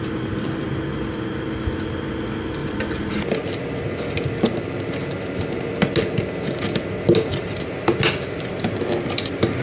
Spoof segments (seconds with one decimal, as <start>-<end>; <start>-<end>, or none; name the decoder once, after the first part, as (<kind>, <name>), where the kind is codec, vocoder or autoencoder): 2.6-3.2 (vocoder, BigVGAN v2); 7.4-8.0

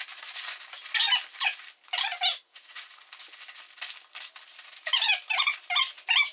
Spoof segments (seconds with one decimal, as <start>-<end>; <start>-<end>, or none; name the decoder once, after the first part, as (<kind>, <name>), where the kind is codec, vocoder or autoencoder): 2.3-3.0 (vocoder, Vocos)

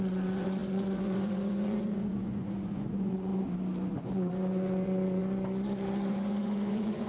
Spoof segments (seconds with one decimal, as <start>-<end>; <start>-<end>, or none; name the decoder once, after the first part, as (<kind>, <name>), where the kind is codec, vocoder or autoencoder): 0.0-3.3 (vocoder, Vocos); 3.9-5.2; 6.1-7.1

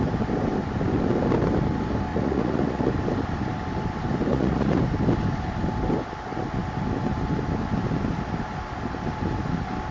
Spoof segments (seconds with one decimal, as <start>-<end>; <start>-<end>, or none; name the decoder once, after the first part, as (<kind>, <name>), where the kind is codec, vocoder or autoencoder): 2.1-2.9 (vocoder, Vocos); 4.3-4.8

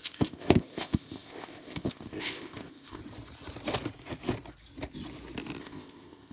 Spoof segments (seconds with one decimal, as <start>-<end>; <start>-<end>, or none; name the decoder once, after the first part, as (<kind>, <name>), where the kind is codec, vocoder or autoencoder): 0.0-3.0 (codec, ZipCodec); 5.6-6.3

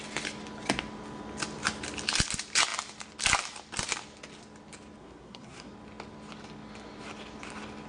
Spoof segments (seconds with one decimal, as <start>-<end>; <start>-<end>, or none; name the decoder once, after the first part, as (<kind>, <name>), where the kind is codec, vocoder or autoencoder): 5.0-5.7 (codec, SNAC)

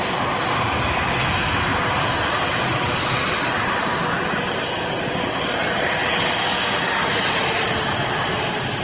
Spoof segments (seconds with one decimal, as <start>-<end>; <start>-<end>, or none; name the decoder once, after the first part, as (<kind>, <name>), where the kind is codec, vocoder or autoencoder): none